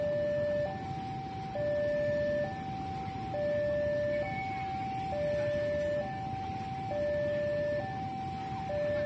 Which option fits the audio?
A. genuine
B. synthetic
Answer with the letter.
A